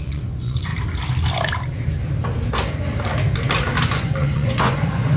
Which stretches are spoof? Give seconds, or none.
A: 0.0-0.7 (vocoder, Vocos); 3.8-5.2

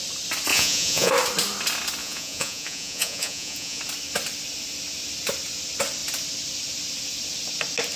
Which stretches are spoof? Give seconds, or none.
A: 0.5-1.1 (vocoder, Vocos); 2.0-3.8